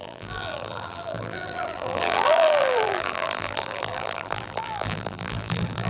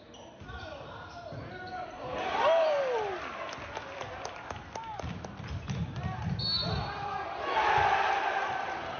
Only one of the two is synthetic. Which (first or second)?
first